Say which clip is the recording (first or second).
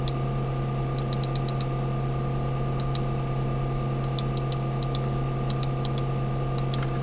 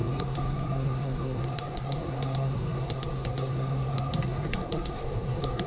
first